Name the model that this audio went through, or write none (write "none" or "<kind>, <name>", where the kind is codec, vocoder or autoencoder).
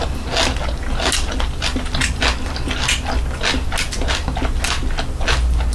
none